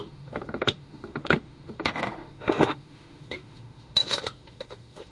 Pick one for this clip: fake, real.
fake